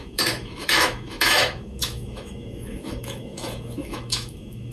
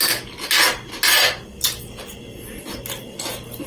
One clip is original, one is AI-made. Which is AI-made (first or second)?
first